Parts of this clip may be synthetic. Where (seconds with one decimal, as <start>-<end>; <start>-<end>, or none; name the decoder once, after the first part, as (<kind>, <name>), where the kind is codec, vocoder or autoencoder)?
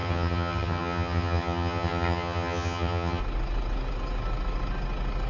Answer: 0.0-3.2 (vocoder, HiFi-GAN)